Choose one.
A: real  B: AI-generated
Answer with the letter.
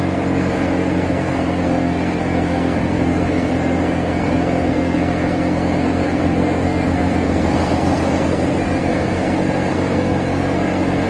B